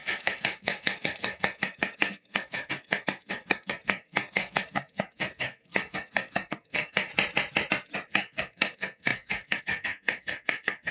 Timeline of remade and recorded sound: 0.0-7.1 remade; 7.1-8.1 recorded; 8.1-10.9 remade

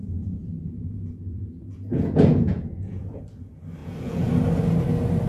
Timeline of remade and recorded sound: 0.0-3.2 remade; 3.2-3.8 recorded; 3.8-4.3 remade; 4.3-5.3 recorded

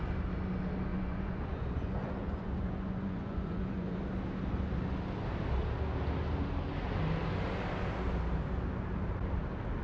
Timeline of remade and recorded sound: 0.0-0.9 recorded; 0.9-4.0 remade; 4.0-9.8 recorded

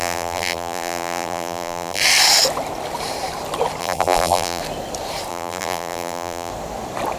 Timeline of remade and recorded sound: 0.0-2.0 remade; 2.0-3.8 recorded; 3.8-4.6 remade; 4.6-5.3 recorded; 5.3-6.5 remade; 6.5-7.2 recorded

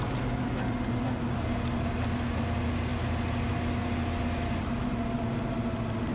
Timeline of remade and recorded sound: 0.0-6.1 recorded

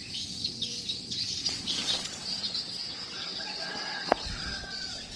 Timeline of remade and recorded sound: 0.0-5.2 remade

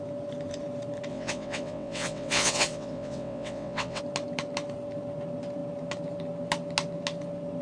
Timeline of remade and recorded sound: 0.0-1.1 recorded; 1.1-4.0 remade; 4.0-7.6 recorded